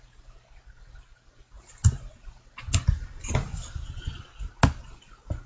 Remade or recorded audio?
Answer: recorded